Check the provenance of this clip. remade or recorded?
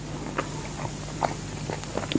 recorded